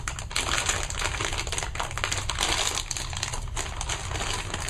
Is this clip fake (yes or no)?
no